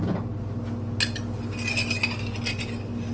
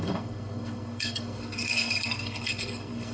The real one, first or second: first